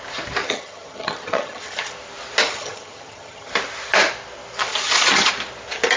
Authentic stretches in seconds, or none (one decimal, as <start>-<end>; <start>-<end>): 0.0-0.4; 1.9-2.5; 3.5-4.7; 5.3-6.0